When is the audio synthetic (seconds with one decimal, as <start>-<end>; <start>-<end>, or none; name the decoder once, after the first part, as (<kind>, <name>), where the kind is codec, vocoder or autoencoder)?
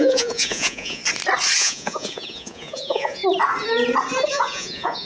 0.0-1.0 (vocoder, Vocos); 1.6-3.2; 4.3-5.0